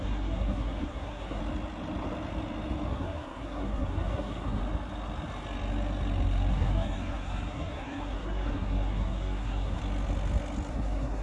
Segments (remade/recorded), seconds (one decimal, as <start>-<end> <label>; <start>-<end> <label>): 0.0-1.4 remade; 1.4-2.9 recorded; 2.9-4.6 remade; 4.6-6.5 recorded; 6.5-9.8 remade; 9.8-10.7 recorded; 10.7-11.2 remade